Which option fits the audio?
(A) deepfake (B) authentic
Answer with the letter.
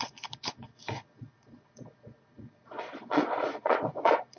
A